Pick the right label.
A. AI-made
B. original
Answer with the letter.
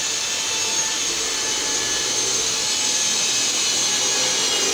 B